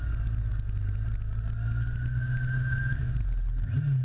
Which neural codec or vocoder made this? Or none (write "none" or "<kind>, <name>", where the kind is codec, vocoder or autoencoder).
none